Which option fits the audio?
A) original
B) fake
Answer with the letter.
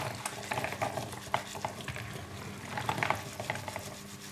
A